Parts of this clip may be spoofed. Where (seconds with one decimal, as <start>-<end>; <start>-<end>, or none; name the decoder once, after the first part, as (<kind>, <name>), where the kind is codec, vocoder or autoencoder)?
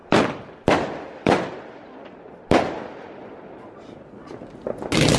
0.0-1.5 (vocoder, BigVGAN v2)